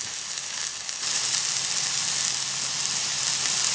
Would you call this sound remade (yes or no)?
no